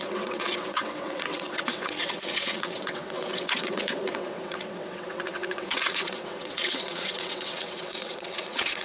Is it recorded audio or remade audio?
remade